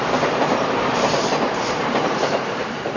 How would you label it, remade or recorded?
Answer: remade